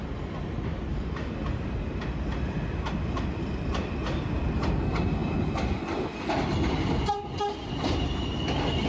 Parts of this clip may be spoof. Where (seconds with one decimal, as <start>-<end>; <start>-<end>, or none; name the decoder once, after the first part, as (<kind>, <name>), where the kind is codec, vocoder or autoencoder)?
none